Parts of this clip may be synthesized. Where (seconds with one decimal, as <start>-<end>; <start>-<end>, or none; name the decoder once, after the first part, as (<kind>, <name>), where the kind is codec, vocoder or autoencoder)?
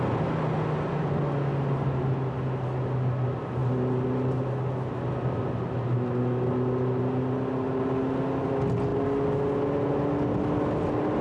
none